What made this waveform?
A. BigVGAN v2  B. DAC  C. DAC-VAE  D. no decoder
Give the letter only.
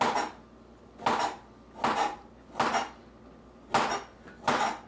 D